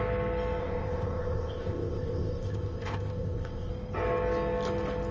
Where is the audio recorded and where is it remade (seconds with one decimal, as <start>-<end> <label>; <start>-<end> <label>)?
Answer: 0.0-0.6 recorded; 0.6-3.7 remade; 3.7-5.1 recorded